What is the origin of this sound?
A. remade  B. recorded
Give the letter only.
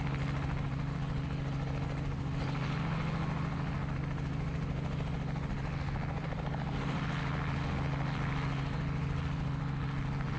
B